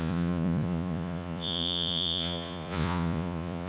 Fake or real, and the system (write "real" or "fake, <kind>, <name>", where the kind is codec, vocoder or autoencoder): fake, vocoder, Vocos